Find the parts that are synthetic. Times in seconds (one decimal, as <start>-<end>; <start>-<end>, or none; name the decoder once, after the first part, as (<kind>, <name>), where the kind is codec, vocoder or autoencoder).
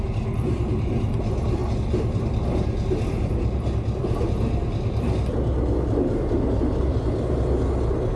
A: none